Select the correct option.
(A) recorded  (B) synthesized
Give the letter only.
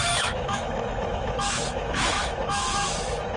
B